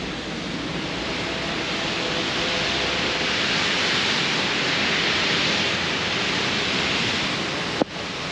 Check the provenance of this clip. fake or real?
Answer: fake